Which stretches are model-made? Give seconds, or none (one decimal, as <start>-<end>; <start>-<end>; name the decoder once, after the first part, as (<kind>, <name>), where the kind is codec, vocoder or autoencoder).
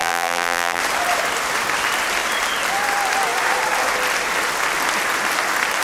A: 0.0-0.8 (vocoder, BigVGAN v2)